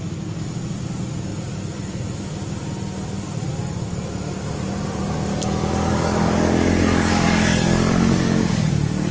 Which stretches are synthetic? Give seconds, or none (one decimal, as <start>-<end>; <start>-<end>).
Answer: 5.3-8.7